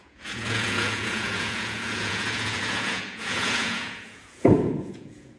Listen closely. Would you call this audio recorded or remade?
remade